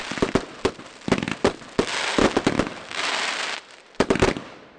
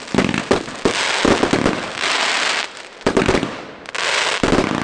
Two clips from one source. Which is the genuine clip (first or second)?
second